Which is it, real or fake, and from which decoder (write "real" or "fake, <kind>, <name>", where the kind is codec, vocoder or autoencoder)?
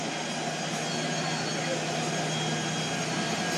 real